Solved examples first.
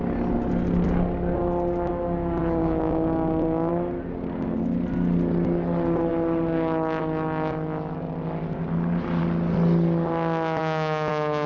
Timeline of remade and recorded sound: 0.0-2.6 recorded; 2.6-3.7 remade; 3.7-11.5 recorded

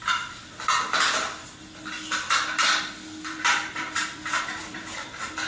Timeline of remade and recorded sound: 0.0-3.3 recorded; 3.3-5.5 remade

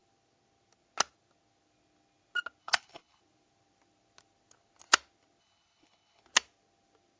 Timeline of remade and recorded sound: 0.0-2.6 recorded; 2.6-3.2 remade; 3.2-5.4 recorded; 5.4-6.2 remade; 6.2-7.2 recorded

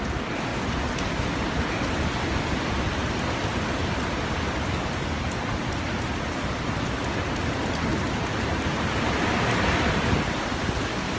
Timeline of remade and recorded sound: 0.0-7.9 recorded; 7.9-9.2 remade; 9.2-11.2 recorded

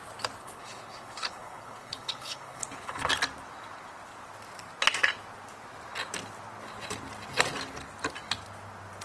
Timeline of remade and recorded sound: 0.0-0.4 recorded; 0.4-3.1 remade; 3.1-9.0 recorded

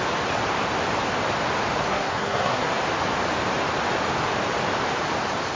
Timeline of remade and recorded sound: 0.0-1.8 recorded; 1.8-2.7 remade; 2.7-5.6 recorded